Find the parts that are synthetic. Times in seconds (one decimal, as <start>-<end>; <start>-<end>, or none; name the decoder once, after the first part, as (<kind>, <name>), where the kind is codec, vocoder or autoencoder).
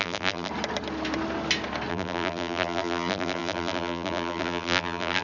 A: 0.0-0.5 (vocoder, BigVGAN v2); 1.9-5.2